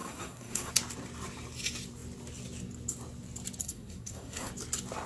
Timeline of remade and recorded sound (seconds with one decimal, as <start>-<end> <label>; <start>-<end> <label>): 0.0-0.7 remade; 0.7-3.6 recorded; 3.6-4.5 remade; 4.5-5.1 recorded